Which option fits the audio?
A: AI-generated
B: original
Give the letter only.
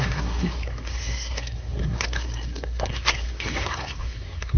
A